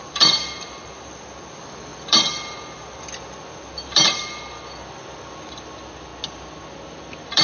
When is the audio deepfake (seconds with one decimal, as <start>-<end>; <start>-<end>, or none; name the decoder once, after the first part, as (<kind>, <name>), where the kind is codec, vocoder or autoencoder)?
0.0-6.1 (vocoder, BigVGAN v2); 6.9-7.4